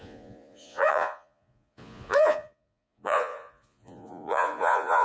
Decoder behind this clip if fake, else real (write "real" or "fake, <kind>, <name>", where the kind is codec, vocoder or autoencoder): fake, vocoder, Vocos